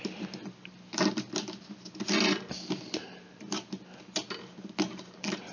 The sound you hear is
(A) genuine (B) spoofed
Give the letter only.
A